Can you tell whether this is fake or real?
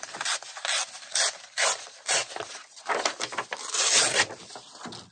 real